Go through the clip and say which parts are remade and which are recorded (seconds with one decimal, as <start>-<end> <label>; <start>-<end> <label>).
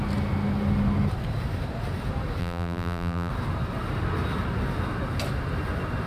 0.0-2.4 recorded; 2.4-3.3 remade; 3.3-6.1 recorded